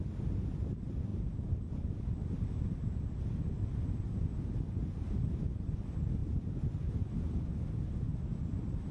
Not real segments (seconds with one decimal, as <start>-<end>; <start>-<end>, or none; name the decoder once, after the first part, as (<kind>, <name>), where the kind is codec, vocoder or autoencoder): none